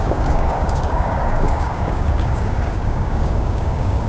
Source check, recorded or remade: remade